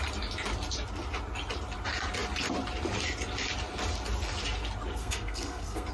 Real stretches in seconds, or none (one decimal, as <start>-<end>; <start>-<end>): 0.0-5.0